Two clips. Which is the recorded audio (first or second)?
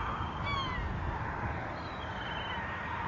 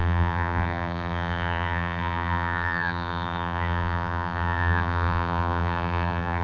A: first